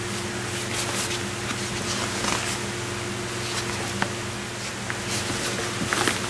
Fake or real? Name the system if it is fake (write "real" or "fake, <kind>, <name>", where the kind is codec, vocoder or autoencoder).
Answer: real